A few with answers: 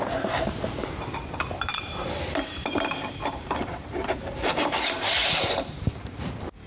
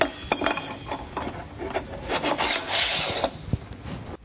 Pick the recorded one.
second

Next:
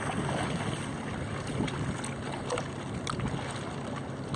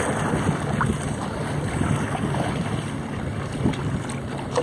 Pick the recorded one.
first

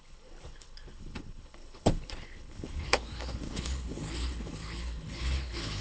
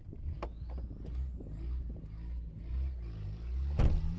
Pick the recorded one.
second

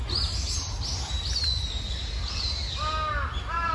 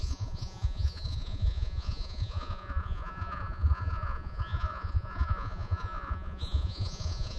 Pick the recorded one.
first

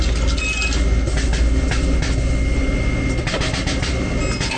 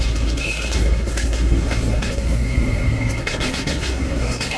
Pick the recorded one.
first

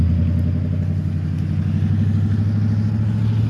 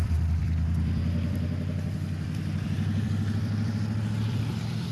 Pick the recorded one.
first